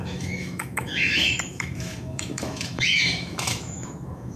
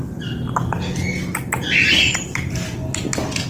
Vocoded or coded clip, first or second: first